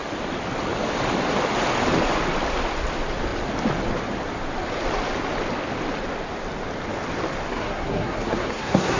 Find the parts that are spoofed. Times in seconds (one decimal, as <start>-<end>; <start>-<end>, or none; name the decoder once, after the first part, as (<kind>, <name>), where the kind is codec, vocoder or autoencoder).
7.5-9.0 (codec, SNAC)